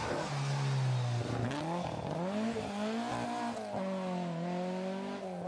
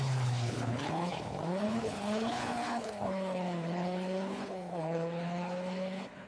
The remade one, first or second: second